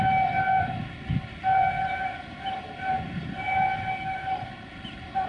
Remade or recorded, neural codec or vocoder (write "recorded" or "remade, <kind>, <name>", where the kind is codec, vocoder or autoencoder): recorded